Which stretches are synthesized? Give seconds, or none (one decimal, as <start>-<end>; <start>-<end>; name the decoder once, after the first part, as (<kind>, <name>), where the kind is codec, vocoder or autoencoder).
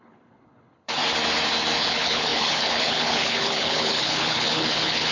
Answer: 0.0-1.0 (codec, HILCodec); 1.8-5.1